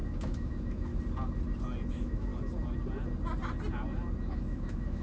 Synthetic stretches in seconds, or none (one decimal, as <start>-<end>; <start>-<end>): 0.0-0.9; 1.9-2.3; 4.3-5.0